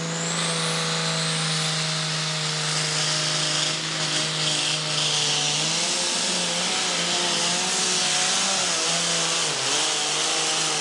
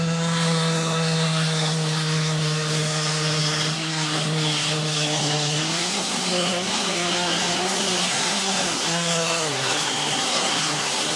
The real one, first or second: first